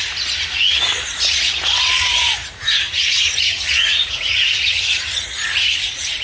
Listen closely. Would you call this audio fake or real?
fake